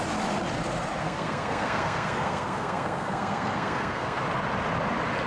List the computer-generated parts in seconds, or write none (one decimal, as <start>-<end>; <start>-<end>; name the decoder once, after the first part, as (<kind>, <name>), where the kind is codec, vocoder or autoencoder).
1.0-4.2 (codec, SNAC)